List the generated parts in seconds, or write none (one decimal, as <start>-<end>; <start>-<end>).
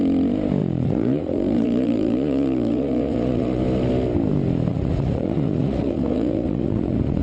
0.6-3.6; 4.7-7.2